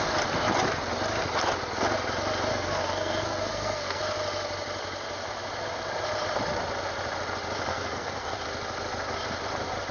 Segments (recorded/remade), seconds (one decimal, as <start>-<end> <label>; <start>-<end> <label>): 0.0-2.5 recorded; 2.5-4.0 remade; 4.0-7.7 recorded; 7.7-8.4 remade; 8.4-9.9 recorded